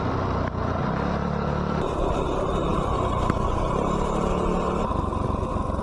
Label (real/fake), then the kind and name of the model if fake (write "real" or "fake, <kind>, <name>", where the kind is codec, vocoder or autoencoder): real